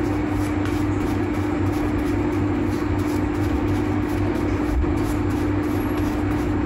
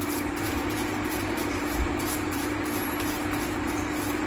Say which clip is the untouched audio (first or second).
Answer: first